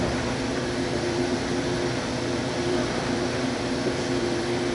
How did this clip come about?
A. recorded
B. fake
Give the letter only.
B